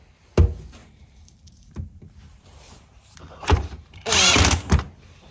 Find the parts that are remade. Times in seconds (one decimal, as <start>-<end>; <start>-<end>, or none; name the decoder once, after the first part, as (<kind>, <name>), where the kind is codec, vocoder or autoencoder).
0.8-4.0 (vocoder, BigVGAN v2)